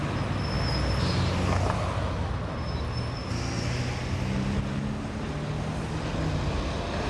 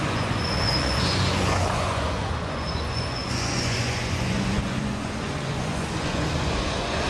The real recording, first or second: first